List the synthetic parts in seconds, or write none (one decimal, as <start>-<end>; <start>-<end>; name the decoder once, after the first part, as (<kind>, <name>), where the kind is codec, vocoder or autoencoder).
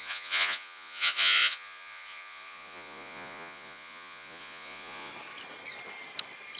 0.0-5.1 (vocoder, Vocos)